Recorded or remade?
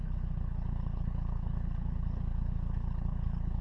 remade